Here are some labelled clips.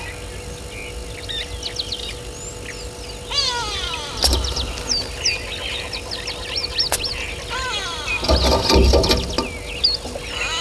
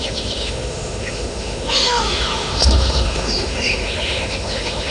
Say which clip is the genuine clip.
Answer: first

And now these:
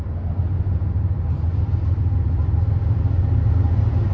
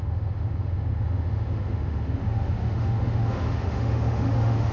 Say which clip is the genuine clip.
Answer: first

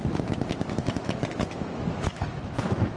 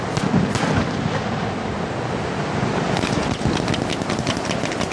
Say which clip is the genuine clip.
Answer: second